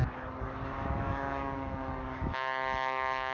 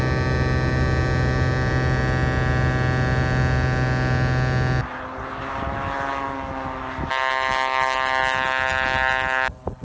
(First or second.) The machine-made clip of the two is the first